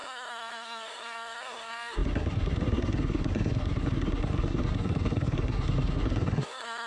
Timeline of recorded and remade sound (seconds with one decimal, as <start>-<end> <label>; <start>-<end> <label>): 0.0-6.9 remade